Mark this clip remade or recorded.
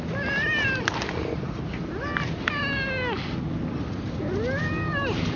recorded